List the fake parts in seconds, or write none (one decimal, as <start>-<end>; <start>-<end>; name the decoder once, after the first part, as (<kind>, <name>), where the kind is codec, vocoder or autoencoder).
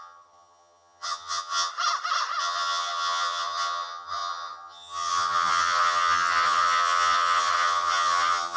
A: 0.0-1.7 (vocoder, HiFi-GAN); 2.4-8.6